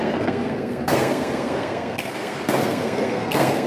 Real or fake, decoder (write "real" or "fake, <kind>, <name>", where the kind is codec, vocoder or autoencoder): fake, codec, SNAC